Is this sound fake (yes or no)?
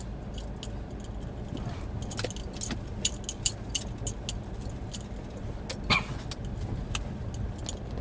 no